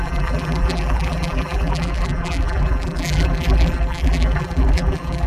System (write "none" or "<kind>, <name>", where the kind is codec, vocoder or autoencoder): vocoder, BigVGAN v2